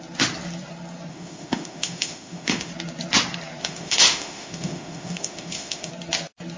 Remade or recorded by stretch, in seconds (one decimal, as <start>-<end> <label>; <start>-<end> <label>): 0.0-1.1 recorded; 1.1-2.7 remade; 2.7-3.6 recorded; 3.6-5.9 remade; 5.9-6.6 recorded